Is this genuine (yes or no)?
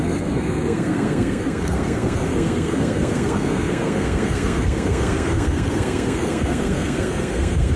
no